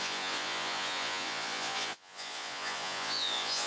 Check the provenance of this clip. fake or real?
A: fake